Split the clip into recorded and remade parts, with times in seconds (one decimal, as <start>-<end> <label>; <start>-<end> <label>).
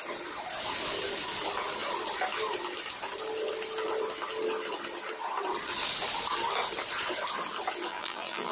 0.0-7.9 recorded; 7.9-8.5 remade